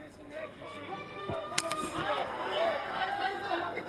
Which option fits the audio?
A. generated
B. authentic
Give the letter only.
A